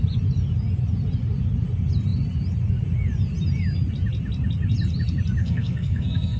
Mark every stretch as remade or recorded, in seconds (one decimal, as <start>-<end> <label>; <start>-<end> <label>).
0.0-5.4 recorded; 5.4-6.4 remade